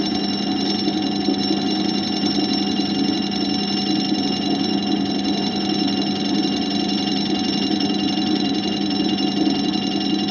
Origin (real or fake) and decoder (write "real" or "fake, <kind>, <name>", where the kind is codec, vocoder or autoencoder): real